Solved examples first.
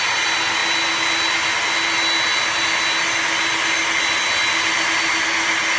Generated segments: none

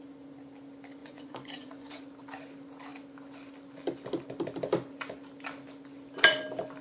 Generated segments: 1.0-2.0 (vocoder, Vocos)

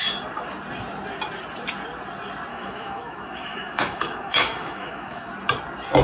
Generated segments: 2.5-5.3 (autoencoder, DAC-VAE)

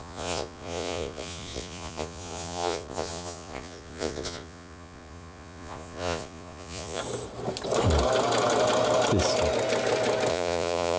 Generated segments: 0.0-7.0 (vocoder, Vocos); 10.3-11.0

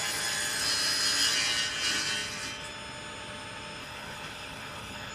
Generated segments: 3.8-5.1 (codec, HILCodec)

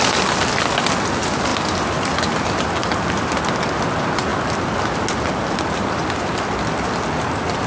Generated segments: none

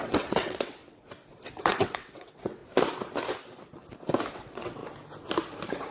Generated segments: 0.0-0.8 (vocoder, WaveNeXt); 1.5-2.6; 4.3-4.8

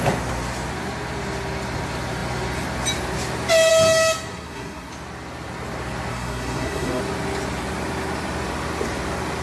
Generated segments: 4.3-4.9 (codec, SNAC); 6.1-7.0